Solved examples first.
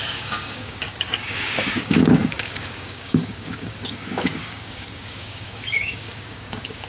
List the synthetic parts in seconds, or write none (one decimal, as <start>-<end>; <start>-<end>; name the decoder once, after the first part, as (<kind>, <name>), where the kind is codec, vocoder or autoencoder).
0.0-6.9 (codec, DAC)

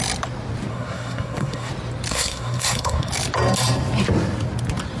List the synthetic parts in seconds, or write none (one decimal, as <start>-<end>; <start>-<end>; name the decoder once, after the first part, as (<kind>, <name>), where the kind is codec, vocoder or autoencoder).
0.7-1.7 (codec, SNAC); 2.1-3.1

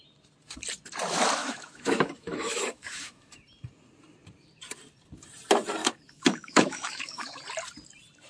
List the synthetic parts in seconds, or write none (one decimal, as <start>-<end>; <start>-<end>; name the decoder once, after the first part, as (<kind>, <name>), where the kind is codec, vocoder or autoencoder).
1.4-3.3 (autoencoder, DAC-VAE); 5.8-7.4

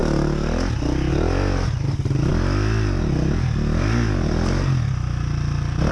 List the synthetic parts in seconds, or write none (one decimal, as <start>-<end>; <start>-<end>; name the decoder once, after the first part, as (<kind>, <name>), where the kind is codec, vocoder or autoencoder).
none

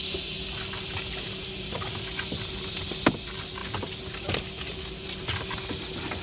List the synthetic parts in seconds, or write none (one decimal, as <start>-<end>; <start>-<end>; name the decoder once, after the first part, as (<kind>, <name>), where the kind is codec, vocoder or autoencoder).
none

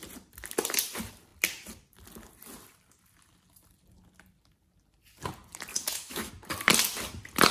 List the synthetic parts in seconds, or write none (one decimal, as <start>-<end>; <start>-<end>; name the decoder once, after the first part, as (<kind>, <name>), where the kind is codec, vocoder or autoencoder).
5.7-6.3 (autoencoder, DAC-VAE)

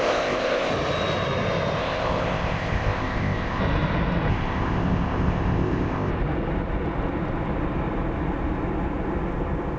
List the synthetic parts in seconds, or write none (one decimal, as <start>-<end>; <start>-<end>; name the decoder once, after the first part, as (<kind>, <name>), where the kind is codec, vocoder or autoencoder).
0.0-0.7 (codec, ZipCodec); 1.8-3.6; 4.3-6.1